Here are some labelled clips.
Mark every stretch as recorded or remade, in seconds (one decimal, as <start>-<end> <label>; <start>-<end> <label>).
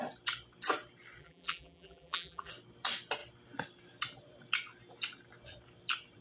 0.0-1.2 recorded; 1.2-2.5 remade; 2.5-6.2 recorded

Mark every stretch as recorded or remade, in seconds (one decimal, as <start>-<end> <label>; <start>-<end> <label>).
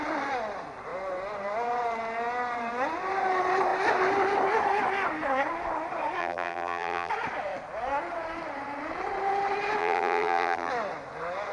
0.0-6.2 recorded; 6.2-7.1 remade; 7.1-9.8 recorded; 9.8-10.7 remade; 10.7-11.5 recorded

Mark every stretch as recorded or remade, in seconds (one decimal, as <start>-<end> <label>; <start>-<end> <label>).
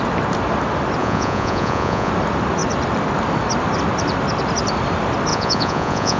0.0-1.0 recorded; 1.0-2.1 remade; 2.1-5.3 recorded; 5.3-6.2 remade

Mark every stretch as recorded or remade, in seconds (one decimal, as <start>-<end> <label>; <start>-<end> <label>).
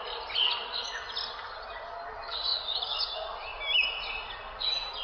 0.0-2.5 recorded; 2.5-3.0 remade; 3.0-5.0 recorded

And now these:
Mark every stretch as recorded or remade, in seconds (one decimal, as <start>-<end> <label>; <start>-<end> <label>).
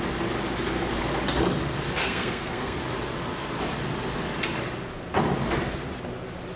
0.0-2.0 recorded; 2.0-2.8 remade; 2.8-6.6 recorded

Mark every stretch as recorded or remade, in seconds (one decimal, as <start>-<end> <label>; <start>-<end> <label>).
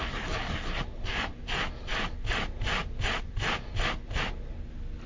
0.0-5.1 recorded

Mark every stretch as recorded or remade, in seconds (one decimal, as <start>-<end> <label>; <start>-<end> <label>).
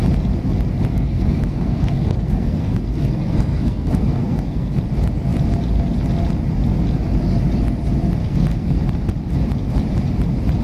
0.0-0.9 recorded; 0.9-4.8 remade; 4.8-8.2 recorded; 8.2-8.8 remade; 8.8-10.6 recorded